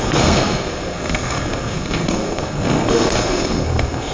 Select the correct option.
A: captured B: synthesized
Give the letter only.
B